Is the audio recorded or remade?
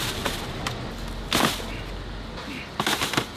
recorded